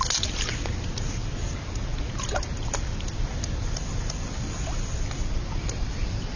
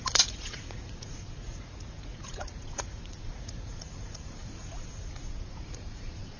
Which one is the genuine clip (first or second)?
first